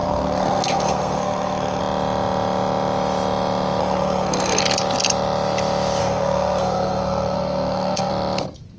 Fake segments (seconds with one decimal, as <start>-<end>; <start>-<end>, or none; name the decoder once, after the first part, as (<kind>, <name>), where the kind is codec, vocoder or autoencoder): 0.0-1.8 (codec, SNAC); 3.8-4.6; 6.0-8.1